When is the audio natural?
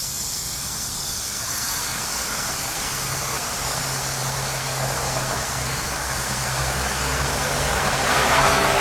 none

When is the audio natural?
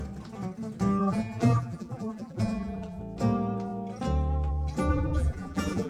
0.0-1.0; 3.0-4.9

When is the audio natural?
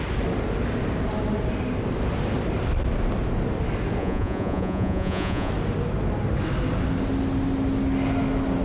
0.0-4.0; 5.5-8.6